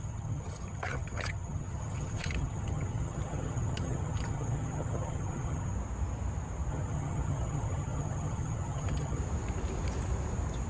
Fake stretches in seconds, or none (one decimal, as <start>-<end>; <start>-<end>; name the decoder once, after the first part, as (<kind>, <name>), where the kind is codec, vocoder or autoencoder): 0.0-5.7 (vocoder, HiFi-GAN); 6.7-9.2